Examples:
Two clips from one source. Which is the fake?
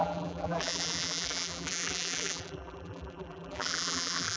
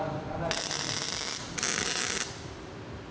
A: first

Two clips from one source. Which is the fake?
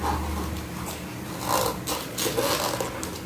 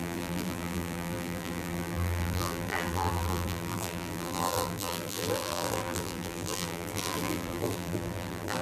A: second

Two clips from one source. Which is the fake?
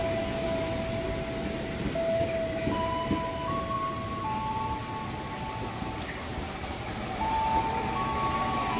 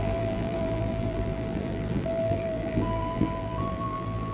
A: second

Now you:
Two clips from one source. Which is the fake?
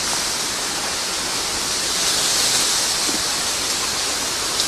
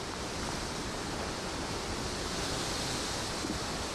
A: second